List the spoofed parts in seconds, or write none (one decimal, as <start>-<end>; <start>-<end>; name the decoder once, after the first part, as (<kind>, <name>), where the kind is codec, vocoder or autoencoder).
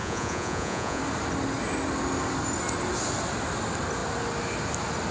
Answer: 0.0-1.0 (vocoder, Vocos)